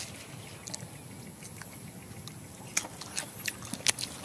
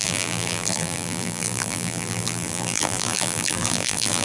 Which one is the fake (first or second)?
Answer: second